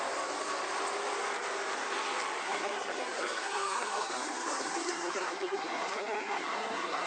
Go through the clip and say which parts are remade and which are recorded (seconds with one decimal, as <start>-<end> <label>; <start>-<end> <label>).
0.0-2.4 recorded; 2.4-7.1 remade